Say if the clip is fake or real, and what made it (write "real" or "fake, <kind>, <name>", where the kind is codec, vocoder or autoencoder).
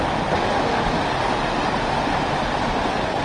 real